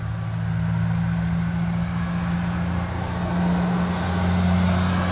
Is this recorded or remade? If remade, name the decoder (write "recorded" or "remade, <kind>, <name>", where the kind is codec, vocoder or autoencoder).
recorded